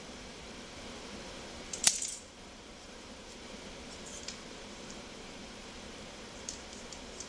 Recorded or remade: remade